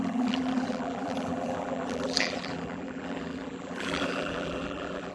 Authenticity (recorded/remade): remade